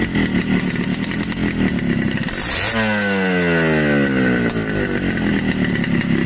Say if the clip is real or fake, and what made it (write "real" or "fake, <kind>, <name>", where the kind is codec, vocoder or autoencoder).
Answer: real